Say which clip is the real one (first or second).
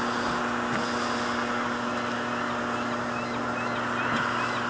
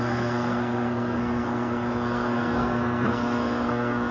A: first